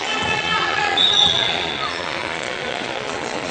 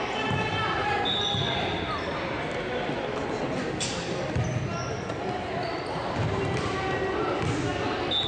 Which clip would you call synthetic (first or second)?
first